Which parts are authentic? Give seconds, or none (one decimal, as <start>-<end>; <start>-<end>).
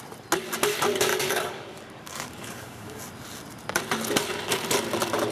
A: 0.0-1.1; 3.0-5.3